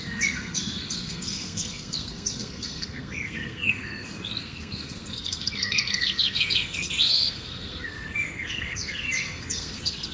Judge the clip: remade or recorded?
remade